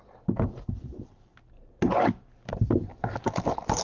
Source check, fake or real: real